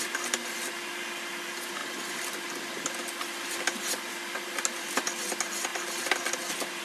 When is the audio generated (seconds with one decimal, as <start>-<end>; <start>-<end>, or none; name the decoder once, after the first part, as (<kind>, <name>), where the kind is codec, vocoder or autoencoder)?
none